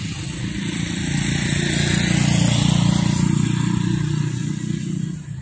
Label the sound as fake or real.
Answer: real